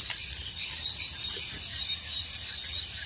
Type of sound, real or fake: real